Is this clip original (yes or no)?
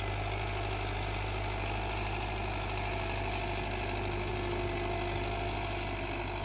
yes